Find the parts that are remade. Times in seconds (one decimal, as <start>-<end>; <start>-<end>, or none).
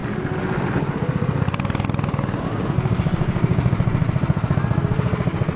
2.1-3.7